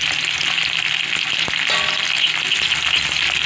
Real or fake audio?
real